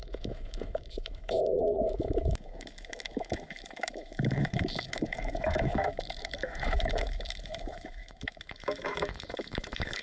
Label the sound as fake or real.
fake